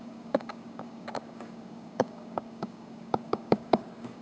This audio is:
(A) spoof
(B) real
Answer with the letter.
A